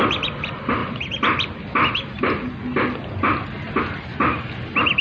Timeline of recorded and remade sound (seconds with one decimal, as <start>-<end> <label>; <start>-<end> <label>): 0.0-5.0 recorded